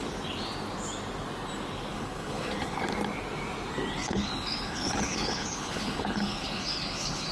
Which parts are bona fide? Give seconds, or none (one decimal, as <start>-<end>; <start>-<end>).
0.0-1.9; 2.8-4.0